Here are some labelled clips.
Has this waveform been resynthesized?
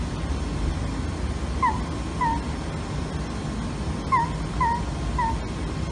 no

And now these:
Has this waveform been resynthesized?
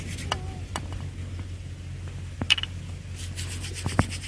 no